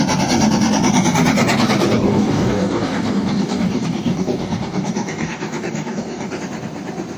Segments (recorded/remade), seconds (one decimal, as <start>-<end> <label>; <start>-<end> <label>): 0.0-2.1 recorded; 2.1-6.4 remade; 6.4-7.2 recorded